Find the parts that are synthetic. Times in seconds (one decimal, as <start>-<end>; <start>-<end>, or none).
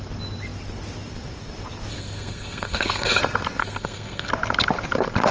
1.9-3.2; 3.6-4.3